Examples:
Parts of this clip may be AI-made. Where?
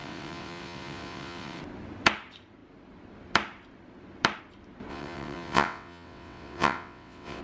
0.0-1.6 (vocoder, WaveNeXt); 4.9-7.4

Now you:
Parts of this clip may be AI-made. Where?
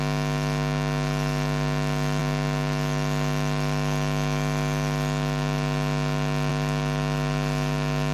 none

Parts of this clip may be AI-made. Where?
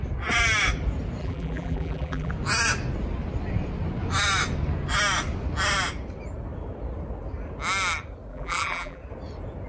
1.2-2.3 (vocoder, BigVGAN v2); 8.3-9.0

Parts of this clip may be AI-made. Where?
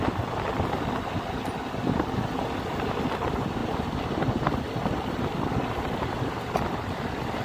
none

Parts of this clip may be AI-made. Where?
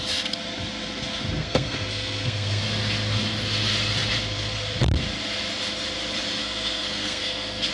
1.4-2.6 (codec, SNAC); 6.4-7.7